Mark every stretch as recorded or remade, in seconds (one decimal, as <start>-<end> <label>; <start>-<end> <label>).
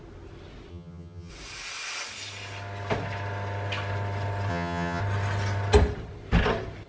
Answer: 0.0-0.7 recorded; 0.7-1.3 remade; 1.3-4.5 recorded; 4.5-5.0 remade; 5.0-6.9 recorded